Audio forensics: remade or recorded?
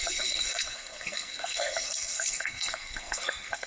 remade